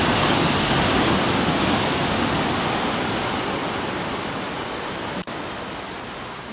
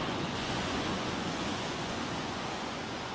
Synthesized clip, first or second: second